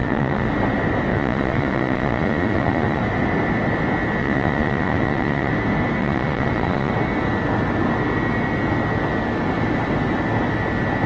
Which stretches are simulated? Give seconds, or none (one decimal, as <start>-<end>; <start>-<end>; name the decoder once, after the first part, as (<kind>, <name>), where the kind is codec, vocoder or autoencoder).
0.0-0.5 (vocoder, Vocos); 1.1-3.0; 4.2-5.5; 6.0-6.9